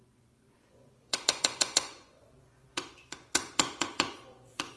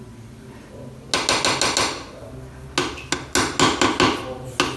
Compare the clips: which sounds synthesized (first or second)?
first